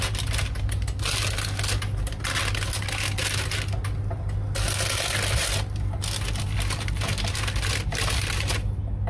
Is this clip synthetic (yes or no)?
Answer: no